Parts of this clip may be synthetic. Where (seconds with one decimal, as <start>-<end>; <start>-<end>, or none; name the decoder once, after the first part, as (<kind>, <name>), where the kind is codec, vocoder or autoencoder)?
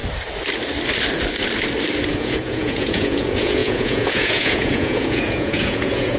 2.1-6.2 (vocoder, Vocos)